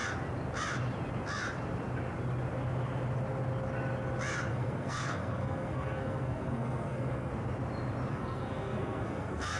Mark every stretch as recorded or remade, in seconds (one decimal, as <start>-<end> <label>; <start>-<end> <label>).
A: 0.0-4.5 recorded; 4.5-7.3 remade; 7.3-8.1 recorded; 8.1-9.6 remade